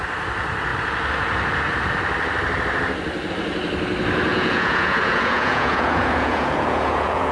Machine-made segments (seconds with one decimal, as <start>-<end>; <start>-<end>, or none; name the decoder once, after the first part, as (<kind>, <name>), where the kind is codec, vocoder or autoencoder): 4.3-7.3 (vocoder, Vocos)